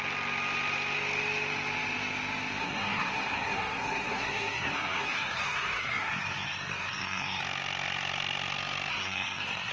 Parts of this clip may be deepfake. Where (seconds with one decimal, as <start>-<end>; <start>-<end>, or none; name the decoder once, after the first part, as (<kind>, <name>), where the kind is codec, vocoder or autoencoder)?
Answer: 2.6-7.4 (codec, SNAC); 8.9-9.7

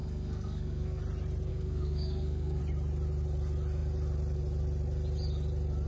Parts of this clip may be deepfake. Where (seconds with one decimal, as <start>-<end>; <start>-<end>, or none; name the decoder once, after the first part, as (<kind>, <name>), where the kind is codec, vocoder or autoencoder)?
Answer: 0.0-1.0 (codec, SNAC); 1.5-2.6

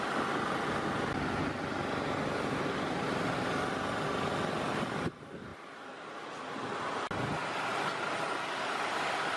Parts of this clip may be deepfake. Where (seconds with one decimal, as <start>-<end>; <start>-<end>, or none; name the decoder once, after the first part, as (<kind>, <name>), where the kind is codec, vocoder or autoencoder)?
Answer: none